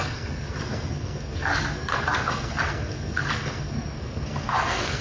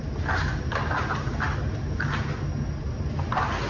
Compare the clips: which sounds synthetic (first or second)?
first